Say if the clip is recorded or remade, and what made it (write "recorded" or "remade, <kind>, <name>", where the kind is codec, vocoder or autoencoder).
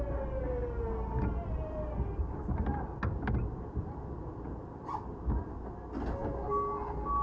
recorded